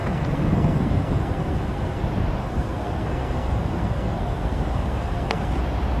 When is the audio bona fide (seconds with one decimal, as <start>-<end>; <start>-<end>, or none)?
2.0-2.4; 5.6-6.0

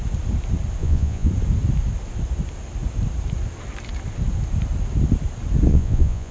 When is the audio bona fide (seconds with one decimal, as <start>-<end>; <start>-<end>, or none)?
0.0-0.8; 1.3-5.7

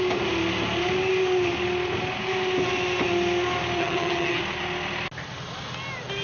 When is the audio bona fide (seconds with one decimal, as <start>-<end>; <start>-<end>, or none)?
0.0-3.8; 4.4-6.2

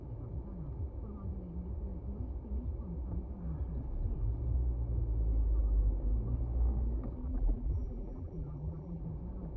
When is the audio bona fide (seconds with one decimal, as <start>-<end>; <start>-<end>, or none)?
0.0-7.2; 9.0-9.6